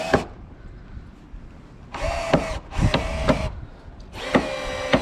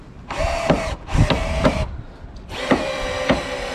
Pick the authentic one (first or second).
first